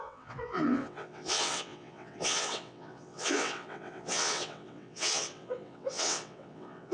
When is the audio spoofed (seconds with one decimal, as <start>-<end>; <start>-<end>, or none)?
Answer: 0.0-6.9